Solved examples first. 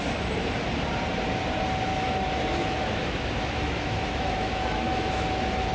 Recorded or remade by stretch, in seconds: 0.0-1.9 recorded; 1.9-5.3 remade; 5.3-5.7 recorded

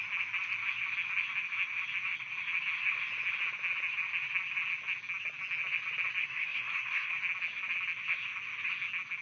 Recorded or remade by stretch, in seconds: 0.0-6.2 recorded; 6.2-7.1 remade; 7.1-9.2 recorded

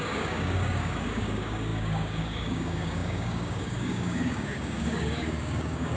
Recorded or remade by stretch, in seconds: 0.0-6.0 remade

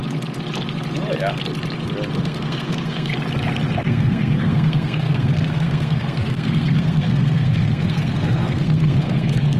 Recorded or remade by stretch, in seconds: 0.0-2.2 recorded; 2.2-3.1 remade; 3.1-3.8 recorded; 3.8-9.6 remade